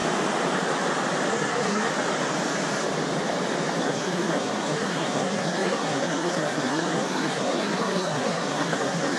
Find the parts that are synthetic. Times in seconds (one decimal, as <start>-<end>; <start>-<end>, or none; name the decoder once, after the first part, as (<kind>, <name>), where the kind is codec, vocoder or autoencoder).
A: 1.3-1.9 (codec, SNAC); 3.8-9.2